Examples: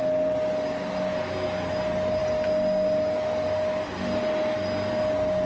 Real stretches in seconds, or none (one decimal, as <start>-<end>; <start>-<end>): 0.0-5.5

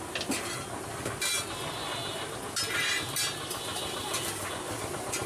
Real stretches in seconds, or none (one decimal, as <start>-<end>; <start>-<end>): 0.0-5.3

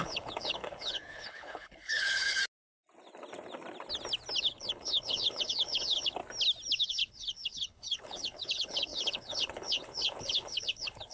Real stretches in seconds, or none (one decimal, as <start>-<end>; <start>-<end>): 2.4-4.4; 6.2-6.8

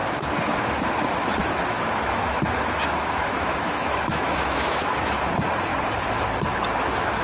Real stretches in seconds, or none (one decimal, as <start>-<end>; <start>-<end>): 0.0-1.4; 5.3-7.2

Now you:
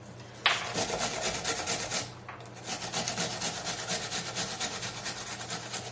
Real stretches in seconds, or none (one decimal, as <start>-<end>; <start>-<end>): 0.0-5.9

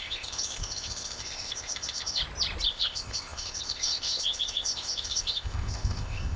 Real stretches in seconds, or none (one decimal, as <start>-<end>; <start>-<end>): 2.2-2.7

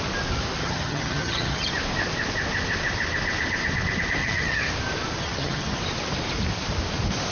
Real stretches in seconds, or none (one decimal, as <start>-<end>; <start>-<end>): 0.0-0.6; 1.7-4.2; 4.7-5.2; 5.8-7.3